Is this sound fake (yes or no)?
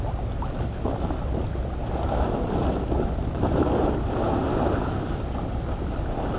no